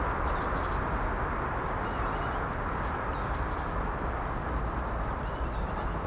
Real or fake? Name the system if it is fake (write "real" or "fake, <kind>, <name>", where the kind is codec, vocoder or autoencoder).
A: real